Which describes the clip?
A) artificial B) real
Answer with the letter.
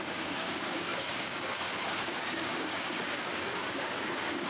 A